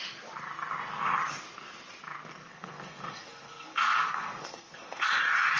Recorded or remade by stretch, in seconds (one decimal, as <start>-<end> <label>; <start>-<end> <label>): 0.0-2.4 recorded; 2.4-5.1 remade; 5.1-5.6 recorded